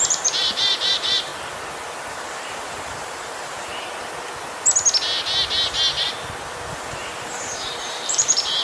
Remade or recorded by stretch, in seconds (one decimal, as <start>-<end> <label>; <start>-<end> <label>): 0.0-1.3 remade; 1.3-2.1 recorded; 2.1-3.7 remade; 3.7-6.7 recorded; 6.7-8.6 remade